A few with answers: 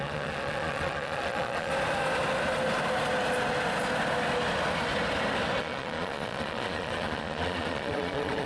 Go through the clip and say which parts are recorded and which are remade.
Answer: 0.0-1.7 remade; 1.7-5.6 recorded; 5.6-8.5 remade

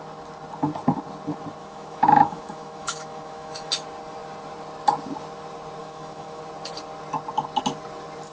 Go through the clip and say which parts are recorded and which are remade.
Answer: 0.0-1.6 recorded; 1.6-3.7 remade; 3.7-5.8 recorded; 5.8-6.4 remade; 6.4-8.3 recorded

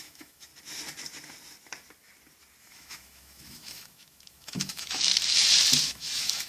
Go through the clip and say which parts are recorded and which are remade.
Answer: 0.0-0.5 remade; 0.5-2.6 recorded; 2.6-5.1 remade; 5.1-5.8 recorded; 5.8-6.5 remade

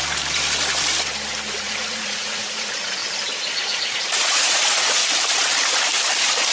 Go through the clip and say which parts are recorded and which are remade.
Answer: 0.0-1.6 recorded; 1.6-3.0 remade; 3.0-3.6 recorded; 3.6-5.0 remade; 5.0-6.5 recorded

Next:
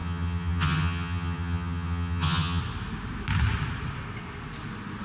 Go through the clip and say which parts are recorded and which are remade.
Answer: 0.0-2.6 remade; 2.6-5.0 recorded